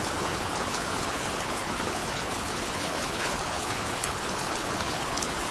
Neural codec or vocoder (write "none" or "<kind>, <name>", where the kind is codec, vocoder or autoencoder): codec, HILCodec